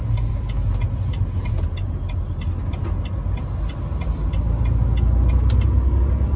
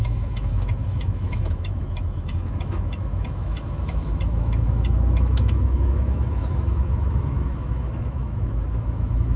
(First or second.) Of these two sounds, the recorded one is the first